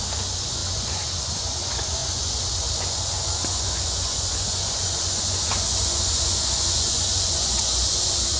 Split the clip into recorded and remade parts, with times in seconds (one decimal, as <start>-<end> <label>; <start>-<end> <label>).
0.0-8.4 remade